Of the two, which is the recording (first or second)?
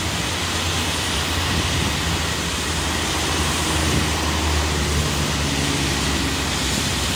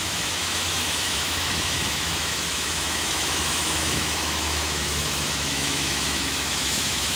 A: first